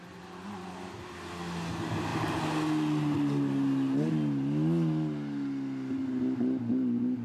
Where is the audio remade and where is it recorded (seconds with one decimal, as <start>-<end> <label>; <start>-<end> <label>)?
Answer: 0.0-7.2 recorded